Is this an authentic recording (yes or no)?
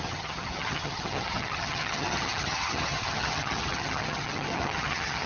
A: no